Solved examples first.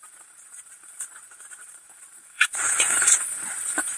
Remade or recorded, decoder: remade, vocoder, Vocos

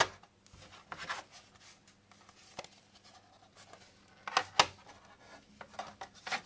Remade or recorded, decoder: recorded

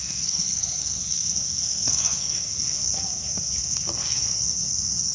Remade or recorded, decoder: remade, codec, SNAC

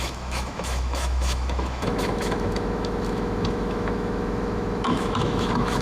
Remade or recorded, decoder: remade, autoencoder, DAC-VAE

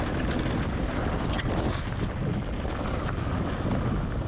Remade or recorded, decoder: recorded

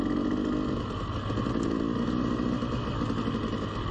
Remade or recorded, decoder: recorded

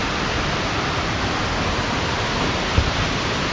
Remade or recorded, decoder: recorded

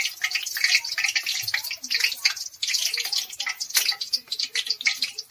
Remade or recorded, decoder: recorded